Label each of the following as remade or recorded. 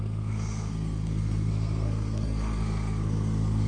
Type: remade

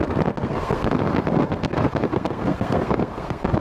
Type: remade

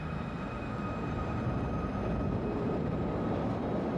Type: remade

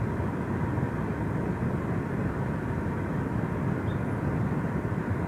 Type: recorded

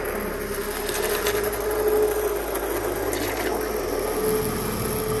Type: recorded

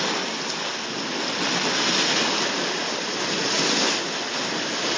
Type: recorded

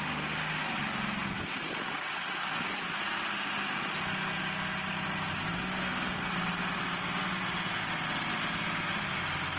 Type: recorded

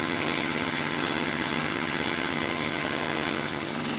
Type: remade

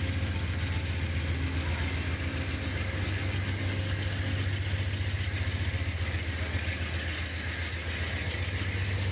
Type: recorded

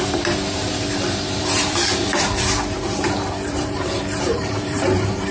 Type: remade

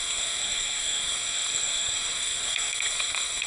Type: remade